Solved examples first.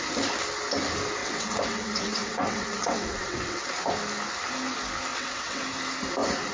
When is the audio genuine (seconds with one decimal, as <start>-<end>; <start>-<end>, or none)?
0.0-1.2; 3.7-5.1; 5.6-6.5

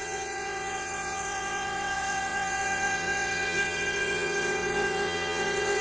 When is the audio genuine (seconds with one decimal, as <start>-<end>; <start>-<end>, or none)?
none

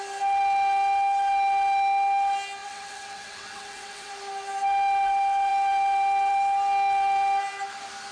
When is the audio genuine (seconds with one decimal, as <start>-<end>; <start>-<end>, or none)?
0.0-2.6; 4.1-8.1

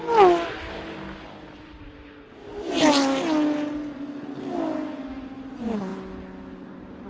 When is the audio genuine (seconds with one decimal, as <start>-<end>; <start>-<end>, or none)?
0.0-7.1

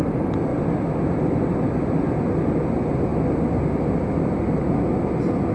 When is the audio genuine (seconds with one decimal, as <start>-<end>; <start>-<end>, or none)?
0.0-5.5

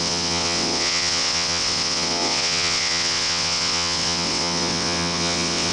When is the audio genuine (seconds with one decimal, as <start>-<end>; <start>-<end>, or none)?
none

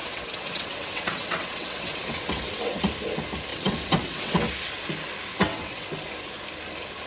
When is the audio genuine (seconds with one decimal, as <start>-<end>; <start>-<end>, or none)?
2.8-3.5; 4.5-5.3; 5.9-7.1

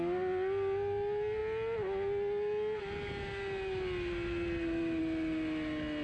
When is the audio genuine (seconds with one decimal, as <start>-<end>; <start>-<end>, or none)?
0.0-6.0